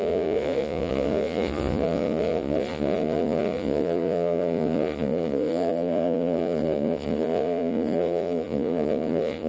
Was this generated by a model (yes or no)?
yes